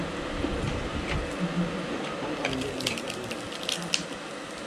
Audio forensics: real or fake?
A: real